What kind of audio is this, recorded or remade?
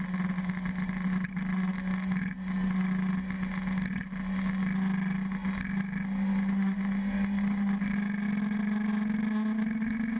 recorded